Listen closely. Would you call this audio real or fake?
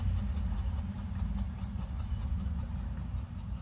real